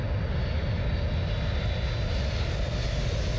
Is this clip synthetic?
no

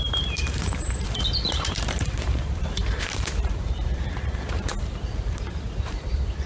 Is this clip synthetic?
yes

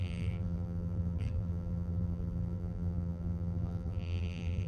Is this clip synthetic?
yes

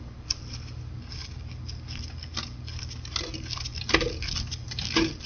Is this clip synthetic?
no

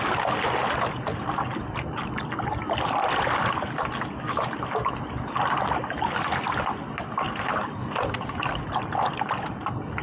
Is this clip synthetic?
no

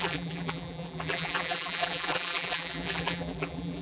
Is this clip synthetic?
yes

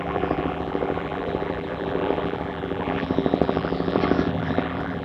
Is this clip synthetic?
yes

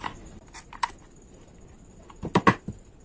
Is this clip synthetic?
yes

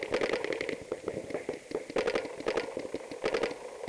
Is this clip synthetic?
no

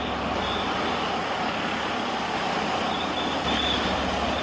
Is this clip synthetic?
no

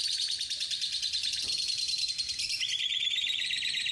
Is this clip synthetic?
yes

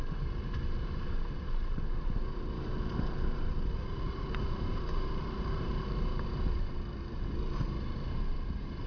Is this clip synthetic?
yes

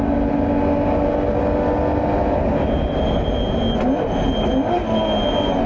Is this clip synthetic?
no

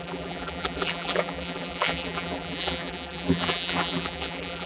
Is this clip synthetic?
yes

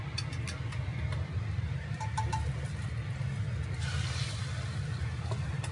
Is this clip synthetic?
no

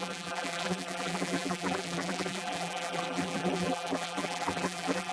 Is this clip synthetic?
yes